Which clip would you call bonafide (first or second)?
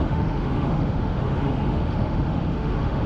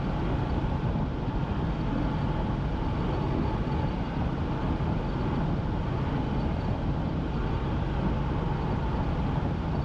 second